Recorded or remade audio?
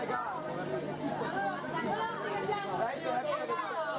recorded